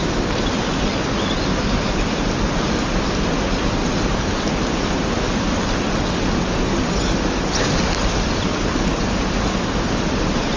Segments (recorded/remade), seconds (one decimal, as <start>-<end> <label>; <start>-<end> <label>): 0.0-0.6 remade; 0.6-10.6 recorded